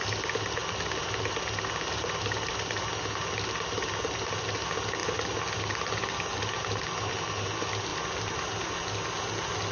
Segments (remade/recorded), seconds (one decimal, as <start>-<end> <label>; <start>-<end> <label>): 0.0-9.7 recorded